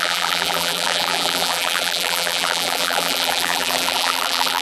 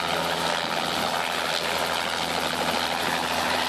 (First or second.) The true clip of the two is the second